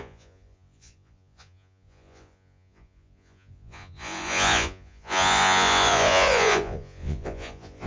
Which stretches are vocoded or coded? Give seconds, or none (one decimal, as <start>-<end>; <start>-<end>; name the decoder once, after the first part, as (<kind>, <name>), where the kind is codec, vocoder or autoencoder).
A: 0.0-7.9 (vocoder, Vocos)